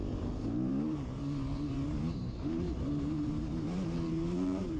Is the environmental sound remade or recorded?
remade